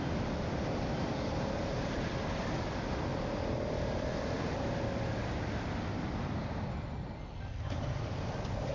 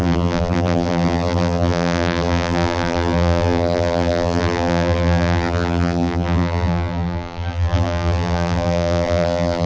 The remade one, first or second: second